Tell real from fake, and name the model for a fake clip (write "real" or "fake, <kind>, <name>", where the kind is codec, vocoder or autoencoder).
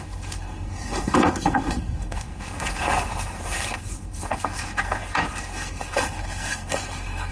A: fake, codec, SNAC